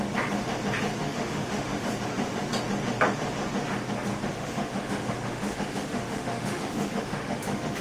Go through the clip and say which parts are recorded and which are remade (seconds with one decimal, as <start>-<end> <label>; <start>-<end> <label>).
0.0-1.0 recorded; 1.0-1.9 remade; 1.9-4.3 recorded; 4.3-7.8 remade